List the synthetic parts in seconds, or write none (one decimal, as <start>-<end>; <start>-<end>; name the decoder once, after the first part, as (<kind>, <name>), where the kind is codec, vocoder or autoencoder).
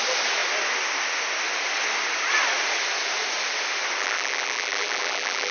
4.0-5.5 (vocoder, BigVGAN v2)